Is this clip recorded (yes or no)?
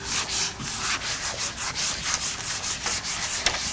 yes